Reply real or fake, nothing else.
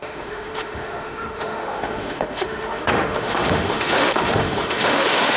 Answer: fake